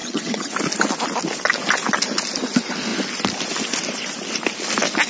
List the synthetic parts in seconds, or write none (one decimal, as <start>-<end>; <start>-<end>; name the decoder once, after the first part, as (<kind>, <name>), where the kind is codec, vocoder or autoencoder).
0.0-0.5 (vocoder, HiFi-GAN)